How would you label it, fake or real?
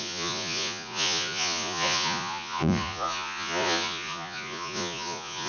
fake